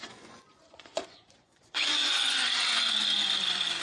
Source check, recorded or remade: remade